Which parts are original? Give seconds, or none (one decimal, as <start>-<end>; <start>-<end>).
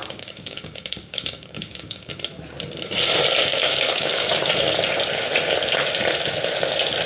2.1-3.5; 4.5-7.1